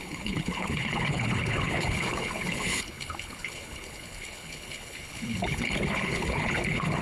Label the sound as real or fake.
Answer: fake